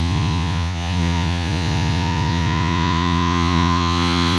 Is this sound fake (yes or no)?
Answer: yes